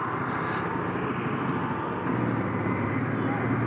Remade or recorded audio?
recorded